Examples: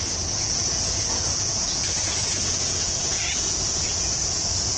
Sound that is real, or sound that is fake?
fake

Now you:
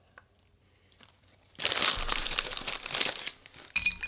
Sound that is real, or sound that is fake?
real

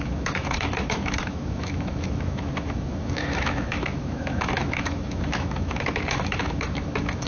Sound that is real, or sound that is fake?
fake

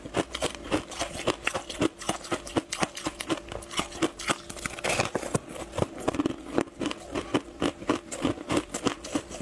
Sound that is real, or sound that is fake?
real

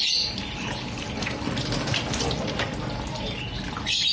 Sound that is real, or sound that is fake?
real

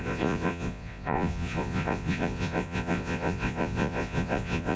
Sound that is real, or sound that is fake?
fake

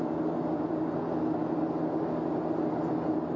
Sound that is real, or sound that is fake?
real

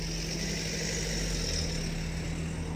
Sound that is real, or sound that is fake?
real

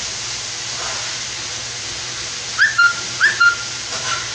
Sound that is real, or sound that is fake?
real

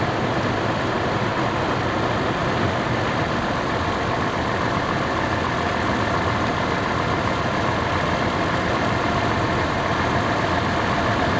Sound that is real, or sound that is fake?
real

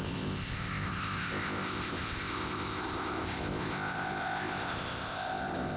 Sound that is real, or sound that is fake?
fake